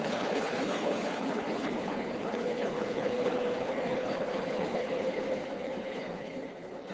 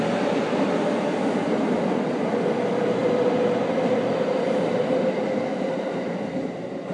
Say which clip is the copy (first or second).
first